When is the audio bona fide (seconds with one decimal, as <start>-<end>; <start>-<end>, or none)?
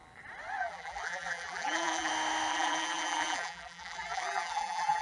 0.0-0.6; 2.1-2.5